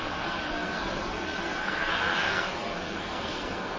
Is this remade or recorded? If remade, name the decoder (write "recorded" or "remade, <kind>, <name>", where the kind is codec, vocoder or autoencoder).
remade, codec, SNAC